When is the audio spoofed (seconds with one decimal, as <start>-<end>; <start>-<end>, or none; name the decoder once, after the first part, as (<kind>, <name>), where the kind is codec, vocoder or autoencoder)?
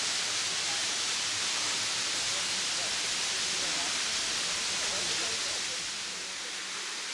none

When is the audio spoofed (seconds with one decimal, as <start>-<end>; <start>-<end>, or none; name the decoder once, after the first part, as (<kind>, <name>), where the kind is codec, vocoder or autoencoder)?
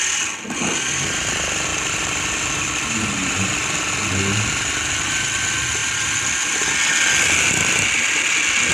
1.7-3.9 (vocoder, BigVGAN v2); 5.8-7.4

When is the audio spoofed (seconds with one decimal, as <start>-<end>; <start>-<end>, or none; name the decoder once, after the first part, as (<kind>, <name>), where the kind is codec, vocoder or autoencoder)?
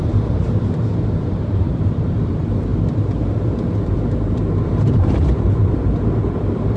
0.0-6.8 (vocoder, BigVGAN v2)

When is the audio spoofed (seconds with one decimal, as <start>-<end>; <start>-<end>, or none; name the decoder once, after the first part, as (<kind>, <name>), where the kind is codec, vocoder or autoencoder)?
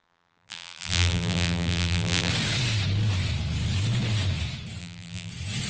0.0-2.3 (vocoder, BigVGAN v2); 4.8-5.3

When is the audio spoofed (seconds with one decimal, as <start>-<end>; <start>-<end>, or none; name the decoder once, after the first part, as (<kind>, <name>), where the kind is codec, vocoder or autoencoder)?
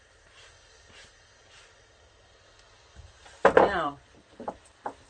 3.4-4.5 (vocoder, BigVGAN v2)